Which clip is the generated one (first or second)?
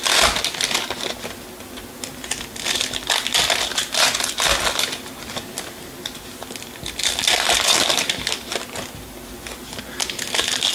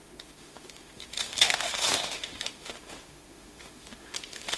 second